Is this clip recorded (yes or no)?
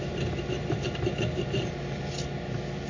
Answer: yes